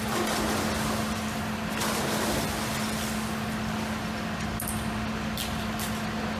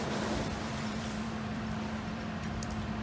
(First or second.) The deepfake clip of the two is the second